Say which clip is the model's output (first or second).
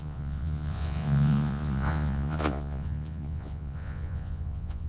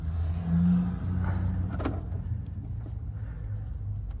first